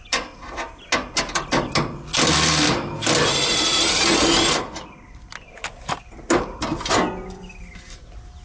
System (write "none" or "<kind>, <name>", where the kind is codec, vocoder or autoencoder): none